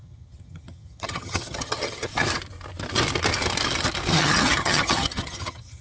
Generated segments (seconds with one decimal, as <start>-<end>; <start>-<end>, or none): 0.0-2.1; 4.2-5.8